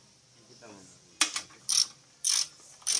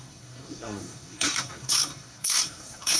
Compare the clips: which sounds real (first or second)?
first